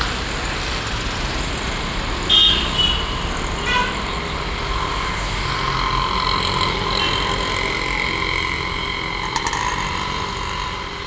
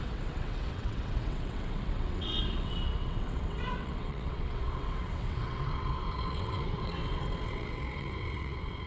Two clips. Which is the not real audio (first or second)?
second